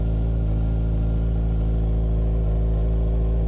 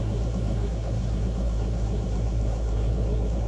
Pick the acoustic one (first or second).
first